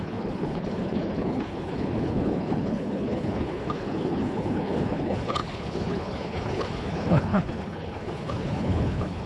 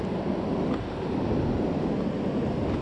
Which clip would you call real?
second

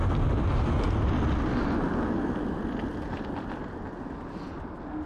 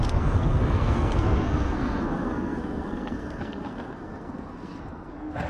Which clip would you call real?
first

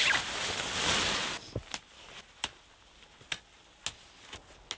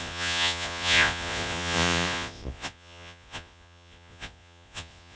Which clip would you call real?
first